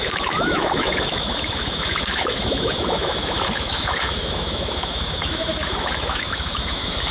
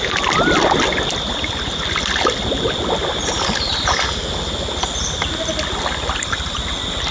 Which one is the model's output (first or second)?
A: first